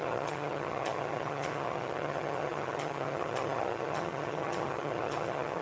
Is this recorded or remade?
remade